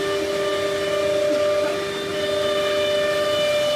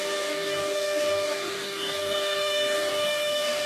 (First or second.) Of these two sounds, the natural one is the first